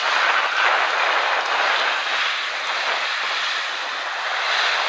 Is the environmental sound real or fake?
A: real